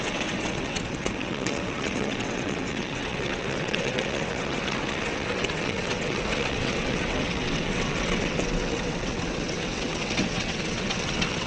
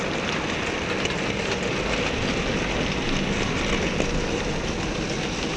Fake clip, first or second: first